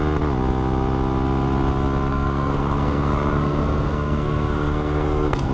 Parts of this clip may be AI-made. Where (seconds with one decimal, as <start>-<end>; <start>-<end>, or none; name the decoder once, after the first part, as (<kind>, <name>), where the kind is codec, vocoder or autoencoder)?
2.1-5.5 (codec, SNAC)

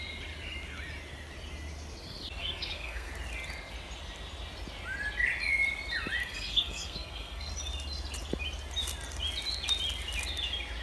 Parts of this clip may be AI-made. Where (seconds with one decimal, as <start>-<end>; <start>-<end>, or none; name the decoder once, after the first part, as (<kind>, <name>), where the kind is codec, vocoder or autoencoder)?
2.4-3.1 (codec, SNAC); 6.2-7.5

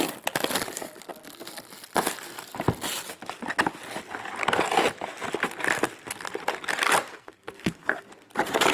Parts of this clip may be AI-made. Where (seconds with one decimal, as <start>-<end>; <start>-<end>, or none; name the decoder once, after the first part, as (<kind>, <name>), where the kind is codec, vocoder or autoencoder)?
7.1-8.1 (codec, SNAC)

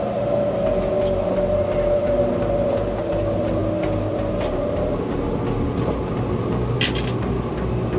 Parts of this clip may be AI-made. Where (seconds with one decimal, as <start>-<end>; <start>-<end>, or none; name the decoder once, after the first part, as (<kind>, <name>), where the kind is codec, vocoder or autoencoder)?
none

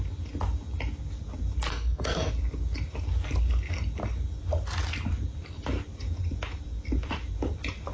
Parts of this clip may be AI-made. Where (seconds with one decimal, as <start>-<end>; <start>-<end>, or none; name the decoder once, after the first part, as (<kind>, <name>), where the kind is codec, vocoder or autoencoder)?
1.7-2.3 (codec, SNAC)

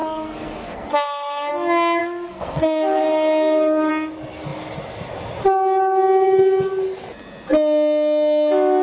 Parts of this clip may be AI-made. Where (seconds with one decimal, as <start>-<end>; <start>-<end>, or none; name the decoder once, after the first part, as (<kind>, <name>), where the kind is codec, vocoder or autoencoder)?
0.0-1.5 (codec, SNAC); 2.0-3.9

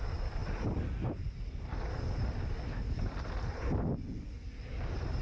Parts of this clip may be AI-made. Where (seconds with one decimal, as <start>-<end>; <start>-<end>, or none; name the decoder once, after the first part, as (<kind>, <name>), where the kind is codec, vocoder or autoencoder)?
none